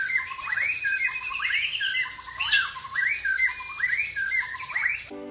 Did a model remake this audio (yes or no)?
no